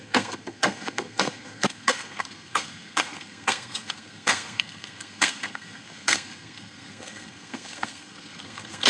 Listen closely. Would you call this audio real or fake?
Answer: fake